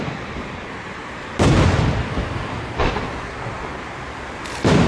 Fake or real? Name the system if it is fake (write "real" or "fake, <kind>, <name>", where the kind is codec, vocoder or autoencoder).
fake, vocoder, BigVGAN v2